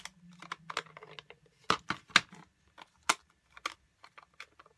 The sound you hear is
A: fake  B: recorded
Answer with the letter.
B